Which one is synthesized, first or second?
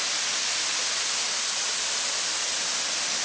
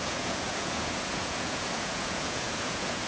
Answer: second